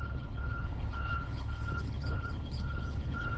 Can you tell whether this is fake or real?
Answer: fake